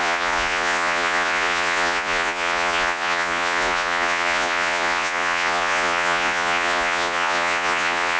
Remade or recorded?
remade